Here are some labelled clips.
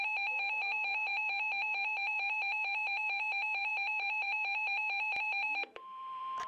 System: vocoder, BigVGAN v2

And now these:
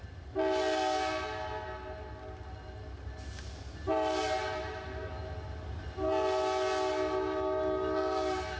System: none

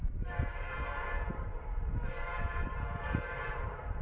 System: vocoder, BigVGAN v2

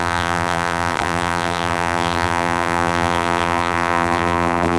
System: vocoder, BigVGAN v2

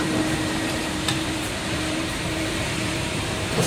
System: vocoder, BigVGAN v2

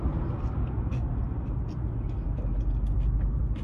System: none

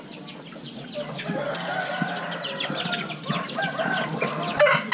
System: none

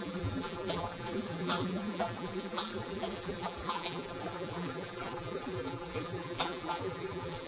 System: vocoder, BigVGAN v2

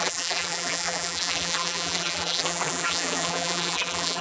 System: vocoder, BigVGAN v2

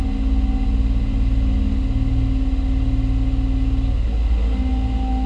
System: none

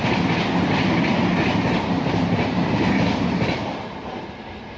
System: none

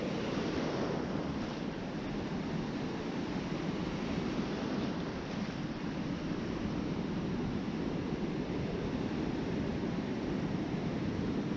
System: vocoder, BigVGAN v2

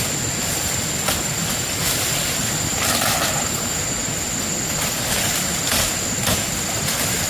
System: none